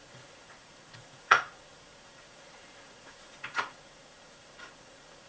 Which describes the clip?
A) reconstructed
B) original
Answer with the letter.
A